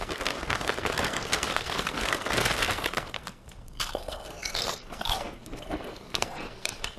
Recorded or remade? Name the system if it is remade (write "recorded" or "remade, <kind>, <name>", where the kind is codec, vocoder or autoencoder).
remade, codec, SNAC